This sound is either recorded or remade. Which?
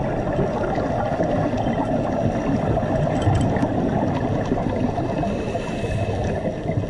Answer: recorded